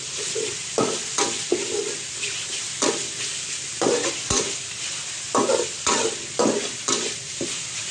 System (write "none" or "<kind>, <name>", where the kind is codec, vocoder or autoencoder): none